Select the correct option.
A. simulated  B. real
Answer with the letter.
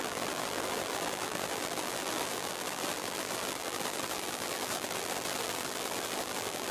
A